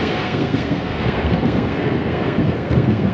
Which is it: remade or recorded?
remade